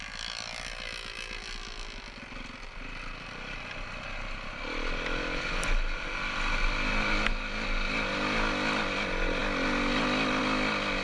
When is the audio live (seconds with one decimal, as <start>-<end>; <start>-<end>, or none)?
0.0-11.0